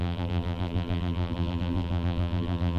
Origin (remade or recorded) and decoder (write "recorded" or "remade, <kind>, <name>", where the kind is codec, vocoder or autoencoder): remade, vocoder, BigVGAN v2